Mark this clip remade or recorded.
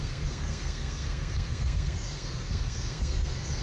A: remade